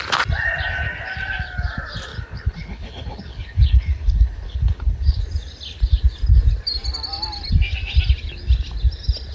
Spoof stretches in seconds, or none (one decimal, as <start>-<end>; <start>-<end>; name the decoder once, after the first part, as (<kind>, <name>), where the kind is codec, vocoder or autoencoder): 2.1-5.2 (codec, HILCodec)